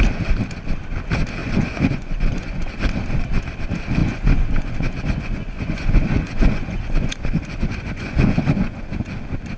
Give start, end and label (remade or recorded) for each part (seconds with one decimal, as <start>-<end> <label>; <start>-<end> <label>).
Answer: 0.0-1.4 recorded; 1.4-2.7 remade; 2.7-4.0 recorded; 4.0-8.8 remade; 8.8-9.6 recorded